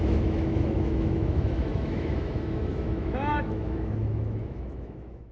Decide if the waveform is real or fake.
fake